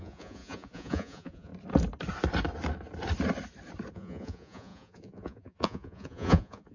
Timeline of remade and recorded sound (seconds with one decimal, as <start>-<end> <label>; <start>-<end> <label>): 0.0-1.5 remade; 1.5-3.9 recorded; 3.9-6.7 remade

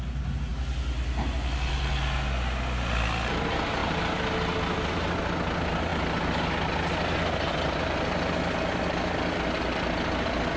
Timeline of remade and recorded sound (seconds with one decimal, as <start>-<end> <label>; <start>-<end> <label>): 0.0-10.6 recorded

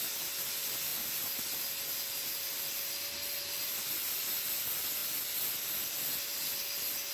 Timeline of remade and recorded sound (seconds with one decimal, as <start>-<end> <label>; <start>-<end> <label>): 0.0-7.1 recorded